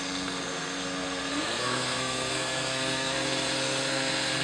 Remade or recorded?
remade